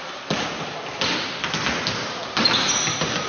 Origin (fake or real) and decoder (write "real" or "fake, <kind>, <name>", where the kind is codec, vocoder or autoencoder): real